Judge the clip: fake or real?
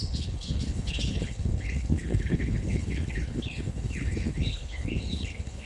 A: fake